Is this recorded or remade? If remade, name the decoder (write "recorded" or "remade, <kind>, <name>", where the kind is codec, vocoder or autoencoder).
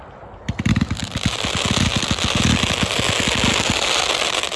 recorded